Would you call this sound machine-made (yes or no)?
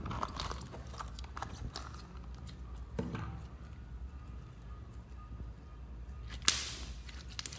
no